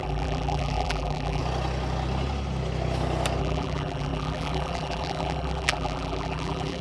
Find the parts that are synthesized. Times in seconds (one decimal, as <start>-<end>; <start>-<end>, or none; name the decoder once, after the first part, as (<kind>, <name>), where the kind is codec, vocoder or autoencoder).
0.0-1.4 (vocoder, BigVGAN v2); 3.4-6.8